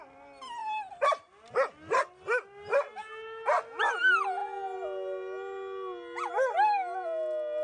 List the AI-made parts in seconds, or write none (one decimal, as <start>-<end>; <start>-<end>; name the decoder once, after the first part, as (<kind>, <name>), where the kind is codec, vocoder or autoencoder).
none

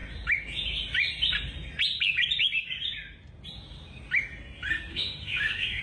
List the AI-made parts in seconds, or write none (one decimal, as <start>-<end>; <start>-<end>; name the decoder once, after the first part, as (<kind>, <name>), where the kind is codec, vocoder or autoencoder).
4.9-5.8 (autoencoder, DAC-VAE)